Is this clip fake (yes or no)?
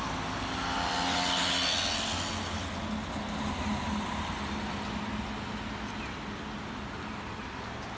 no